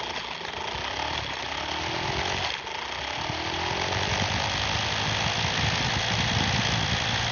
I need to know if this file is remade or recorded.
recorded